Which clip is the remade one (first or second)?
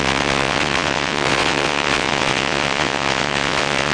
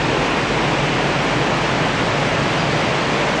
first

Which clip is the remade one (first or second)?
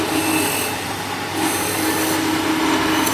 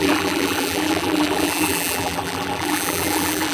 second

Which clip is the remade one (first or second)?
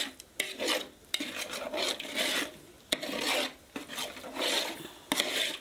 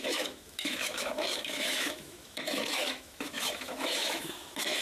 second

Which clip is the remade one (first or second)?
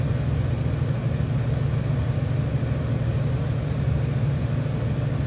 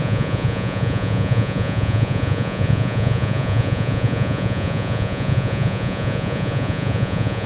second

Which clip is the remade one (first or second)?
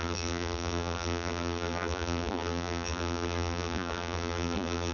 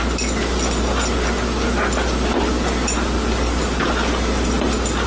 first